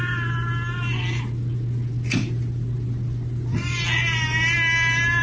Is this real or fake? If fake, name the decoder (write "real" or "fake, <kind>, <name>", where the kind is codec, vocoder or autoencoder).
real